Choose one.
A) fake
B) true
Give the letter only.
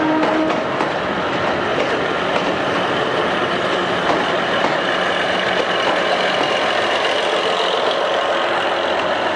B